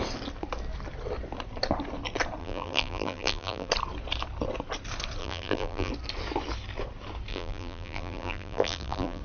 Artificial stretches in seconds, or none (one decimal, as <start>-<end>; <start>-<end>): 2.4-3.7; 5.2-5.9; 7.3-9.2